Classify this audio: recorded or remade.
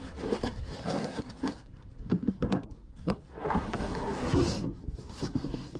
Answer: remade